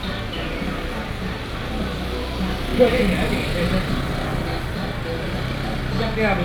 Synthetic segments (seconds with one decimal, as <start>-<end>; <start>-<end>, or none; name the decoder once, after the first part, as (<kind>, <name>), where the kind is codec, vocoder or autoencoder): 2.7-3.9 (vocoder, BigVGAN v2); 4.3-5.8